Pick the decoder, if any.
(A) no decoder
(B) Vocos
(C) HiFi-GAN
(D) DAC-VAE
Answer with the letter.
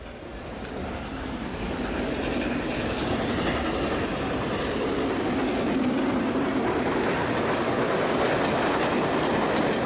A